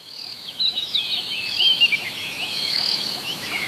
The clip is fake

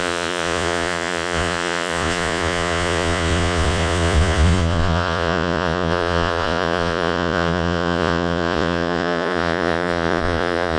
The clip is fake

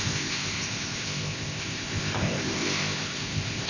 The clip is fake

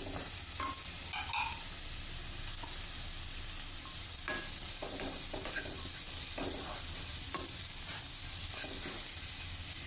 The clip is real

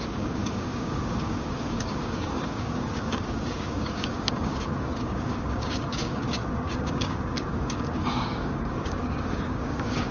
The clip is fake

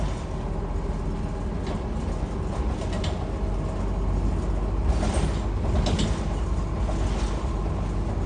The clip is real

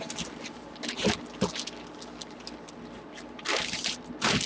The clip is real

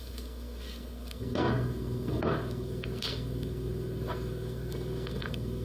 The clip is fake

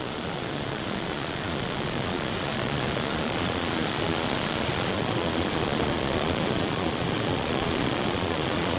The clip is fake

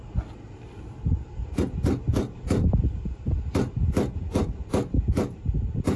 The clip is real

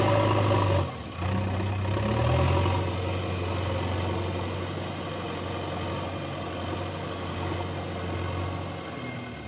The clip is real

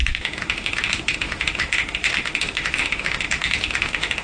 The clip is fake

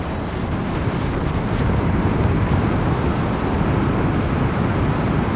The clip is real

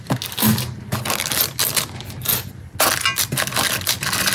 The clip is real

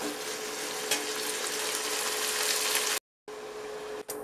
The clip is real